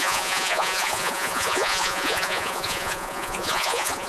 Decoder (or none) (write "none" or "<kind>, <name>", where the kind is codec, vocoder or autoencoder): vocoder, Vocos